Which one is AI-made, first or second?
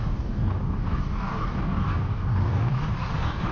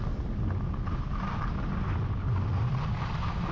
first